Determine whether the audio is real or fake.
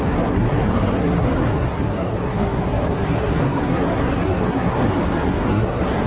fake